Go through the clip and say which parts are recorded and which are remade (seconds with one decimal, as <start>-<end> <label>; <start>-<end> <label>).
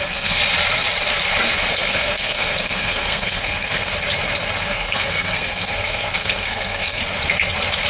0.0-0.4 remade; 0.4-1.7 recorded; 1.7-3.9 remade; 3.9-4.6 recorded; 4.6-7.0 remade; 7.0-7.9 recorded